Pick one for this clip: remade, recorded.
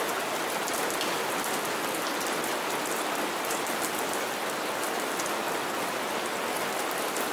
recorded